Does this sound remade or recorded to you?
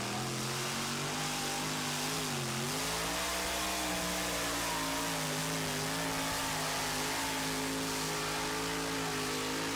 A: recorded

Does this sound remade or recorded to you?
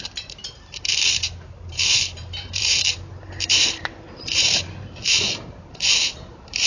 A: remade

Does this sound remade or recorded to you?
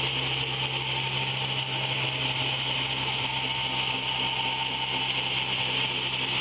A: recorded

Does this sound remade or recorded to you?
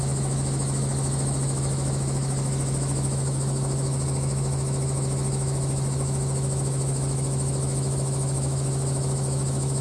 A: remade